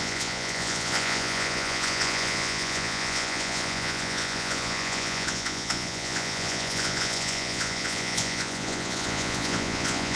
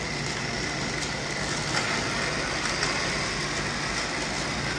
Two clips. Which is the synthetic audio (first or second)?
first